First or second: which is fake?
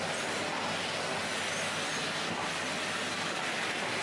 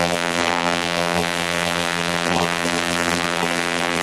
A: second